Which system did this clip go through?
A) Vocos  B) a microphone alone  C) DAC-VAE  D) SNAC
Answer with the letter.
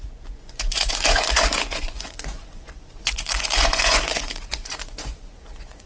A